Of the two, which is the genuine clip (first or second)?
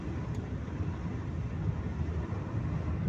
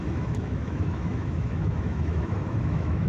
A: first